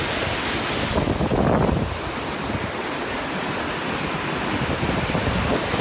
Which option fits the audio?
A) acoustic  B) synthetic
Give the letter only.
A